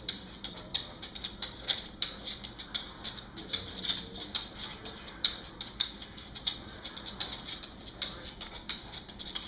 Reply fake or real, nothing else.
fake